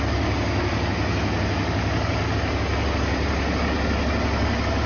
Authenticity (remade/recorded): recorded